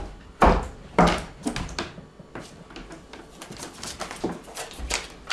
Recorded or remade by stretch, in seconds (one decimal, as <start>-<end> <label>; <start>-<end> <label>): 0.0-5.3 recorded